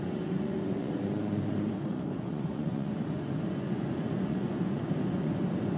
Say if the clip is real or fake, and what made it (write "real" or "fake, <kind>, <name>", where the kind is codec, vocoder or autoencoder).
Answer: fake, vocoder, Vocos